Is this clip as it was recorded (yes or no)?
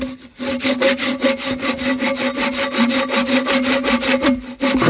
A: yes